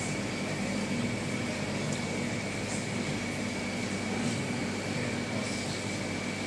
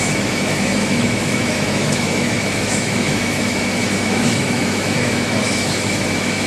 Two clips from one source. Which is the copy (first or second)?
second